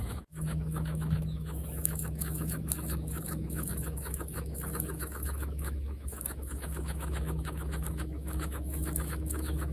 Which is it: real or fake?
fake